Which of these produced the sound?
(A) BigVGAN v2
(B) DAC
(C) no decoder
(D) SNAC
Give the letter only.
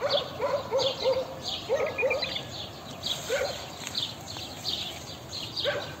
C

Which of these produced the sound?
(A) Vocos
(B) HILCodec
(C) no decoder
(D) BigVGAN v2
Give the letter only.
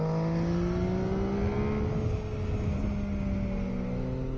C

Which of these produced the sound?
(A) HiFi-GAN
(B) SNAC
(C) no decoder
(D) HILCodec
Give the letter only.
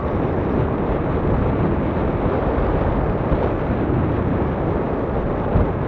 C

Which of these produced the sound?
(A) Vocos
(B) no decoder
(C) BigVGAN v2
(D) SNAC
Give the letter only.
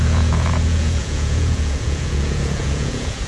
A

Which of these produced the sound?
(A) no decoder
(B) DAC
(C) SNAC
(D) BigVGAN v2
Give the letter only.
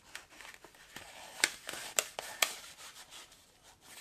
D